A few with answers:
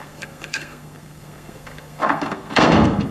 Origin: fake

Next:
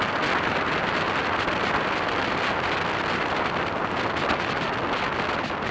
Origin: real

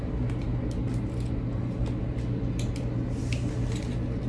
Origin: real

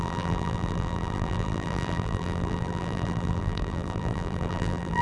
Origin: fake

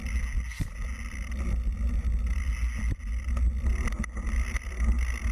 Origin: real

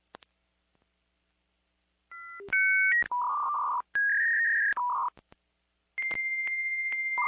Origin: real